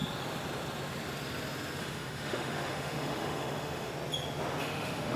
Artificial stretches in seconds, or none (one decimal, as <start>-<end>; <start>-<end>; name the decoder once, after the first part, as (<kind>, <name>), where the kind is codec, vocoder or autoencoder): 1.8-3.9 (autoencoder, DAC-VAE); 4.6-5.2